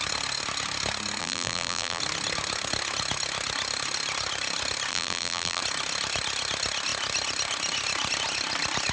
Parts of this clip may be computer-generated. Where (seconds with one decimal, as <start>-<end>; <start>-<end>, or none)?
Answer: 1.2-2.0; 4.9-5.6